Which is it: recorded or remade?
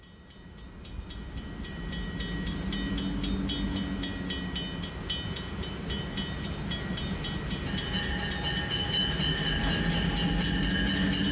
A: recorded